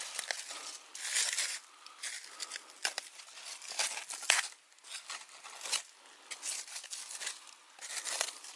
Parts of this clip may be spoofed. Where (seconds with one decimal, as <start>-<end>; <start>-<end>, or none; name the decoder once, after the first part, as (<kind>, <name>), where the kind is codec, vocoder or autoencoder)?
none